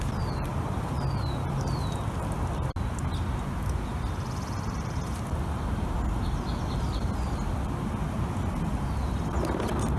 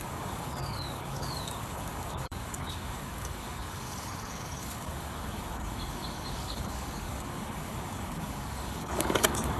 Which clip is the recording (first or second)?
first